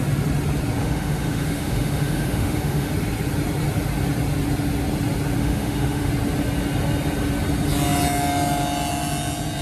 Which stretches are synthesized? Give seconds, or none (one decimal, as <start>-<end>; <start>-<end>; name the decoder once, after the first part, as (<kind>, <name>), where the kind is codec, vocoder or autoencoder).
0.8-2.9 (autoencoder, DAC-VAE); 5.4-6.1